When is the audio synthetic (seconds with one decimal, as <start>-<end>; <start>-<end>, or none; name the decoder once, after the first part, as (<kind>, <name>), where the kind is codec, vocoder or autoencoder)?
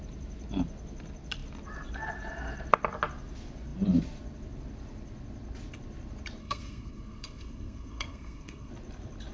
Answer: 6.4-8.7 (codec, SNAC)